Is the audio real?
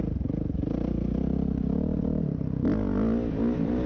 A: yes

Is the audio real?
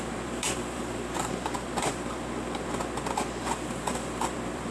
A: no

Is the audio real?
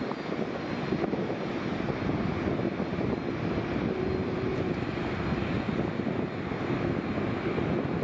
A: yes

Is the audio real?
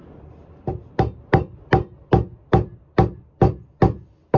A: no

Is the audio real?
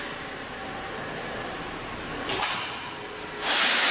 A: no